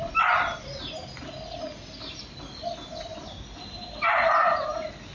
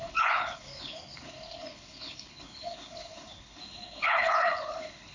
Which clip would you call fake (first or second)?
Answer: second